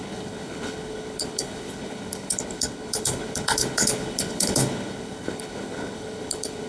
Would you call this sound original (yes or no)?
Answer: no